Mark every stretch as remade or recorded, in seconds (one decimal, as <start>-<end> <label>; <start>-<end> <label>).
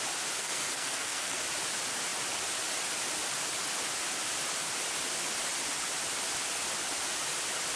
0.0-0.4 recorded; 0.4-1.4 remade; 1.4-7.8 recorded